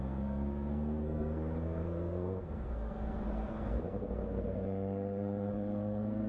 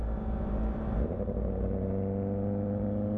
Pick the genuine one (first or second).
second